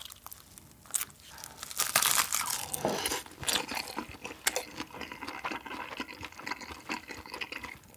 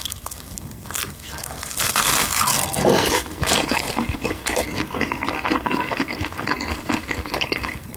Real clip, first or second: first